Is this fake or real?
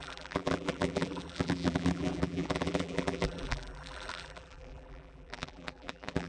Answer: fake